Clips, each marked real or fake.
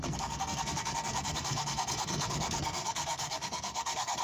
fake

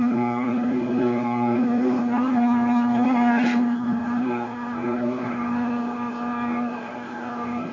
fake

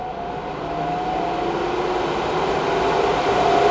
real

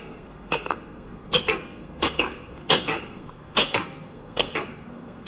fake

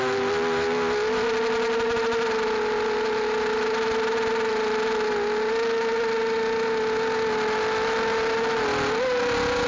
real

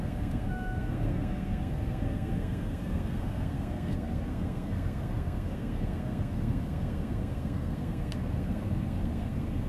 fake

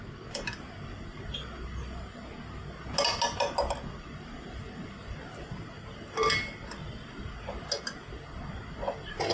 real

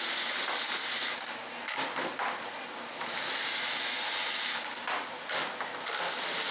real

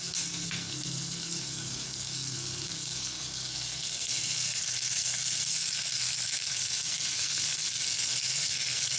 fake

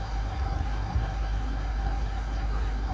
fake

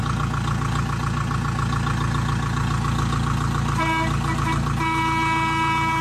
real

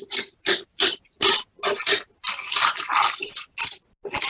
real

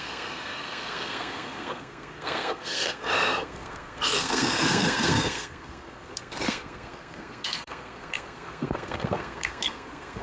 fake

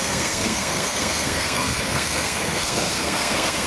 fake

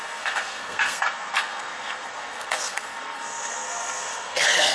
fake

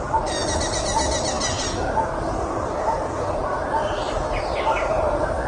real